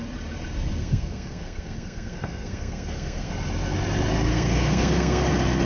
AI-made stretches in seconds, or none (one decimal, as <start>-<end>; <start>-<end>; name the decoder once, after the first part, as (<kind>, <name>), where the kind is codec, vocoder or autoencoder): 0.8-3.3 (codec, SNAC); 4.3-5.3